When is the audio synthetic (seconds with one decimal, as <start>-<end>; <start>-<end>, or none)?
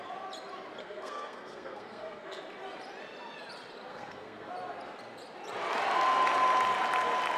0.8-2.4; 3.9-4.5